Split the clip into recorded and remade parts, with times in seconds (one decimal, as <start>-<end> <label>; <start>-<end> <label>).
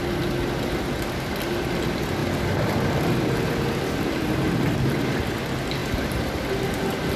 0.0-2.2 recorded; 2.2-4.2 remade; 4.2-5.8 recorded; 5.8-6.4 remade; 6.4-7.2 recorded